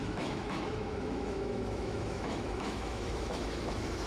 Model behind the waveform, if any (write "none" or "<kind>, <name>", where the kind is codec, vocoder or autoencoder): autoencoder, DAC-VAE